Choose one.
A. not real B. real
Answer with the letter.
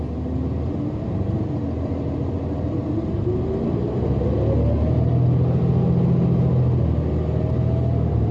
B